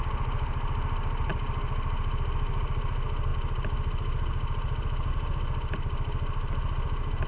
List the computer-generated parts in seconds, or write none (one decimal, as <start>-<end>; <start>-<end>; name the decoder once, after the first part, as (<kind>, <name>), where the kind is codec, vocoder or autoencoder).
none